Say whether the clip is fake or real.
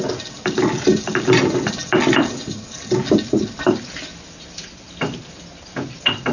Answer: real